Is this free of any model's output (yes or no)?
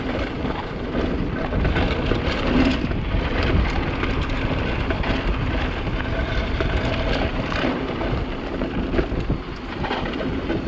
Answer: yes